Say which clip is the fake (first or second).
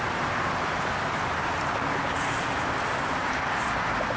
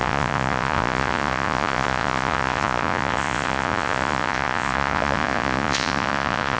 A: second